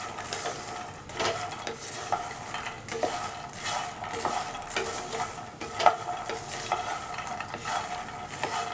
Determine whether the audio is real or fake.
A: real